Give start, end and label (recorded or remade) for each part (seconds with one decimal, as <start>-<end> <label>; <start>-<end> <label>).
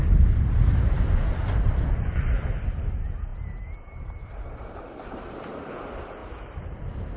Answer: 0.0-3.3 recorded; 3.3-5.6 remade; 5.6-6.2 recorded; 6.2-6.8 remade; 6.8-7.2 recorded